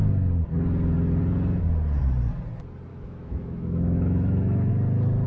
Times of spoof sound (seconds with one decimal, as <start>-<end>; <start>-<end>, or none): 2.9-4.7